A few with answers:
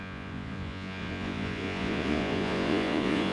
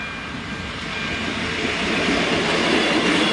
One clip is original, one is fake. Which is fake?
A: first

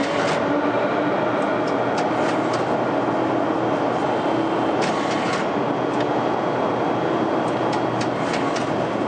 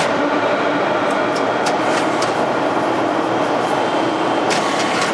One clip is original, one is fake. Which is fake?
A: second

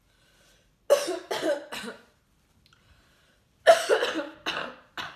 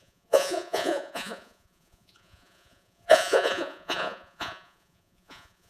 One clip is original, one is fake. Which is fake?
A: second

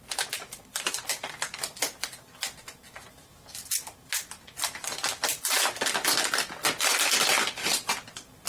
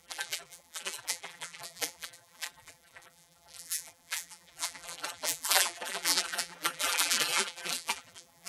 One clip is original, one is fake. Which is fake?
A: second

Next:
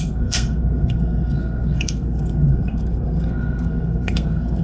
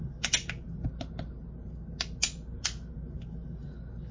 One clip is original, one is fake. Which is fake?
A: first